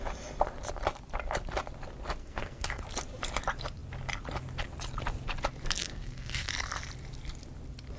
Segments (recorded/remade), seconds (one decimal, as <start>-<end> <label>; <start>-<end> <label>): 0.0-2.2 recorded; 2.2-2.8 remade; 2.8-5.8 recorded; 5.8-6.5 remade; 6.5-8.0 recorded